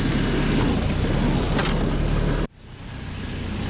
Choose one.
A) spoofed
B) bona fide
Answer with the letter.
B